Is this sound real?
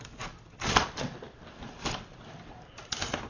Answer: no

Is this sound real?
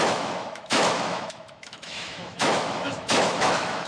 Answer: no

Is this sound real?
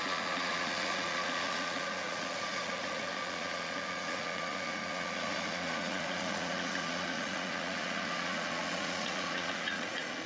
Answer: no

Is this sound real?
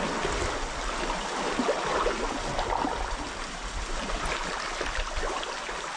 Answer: yes